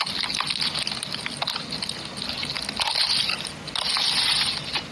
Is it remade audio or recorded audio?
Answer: recorded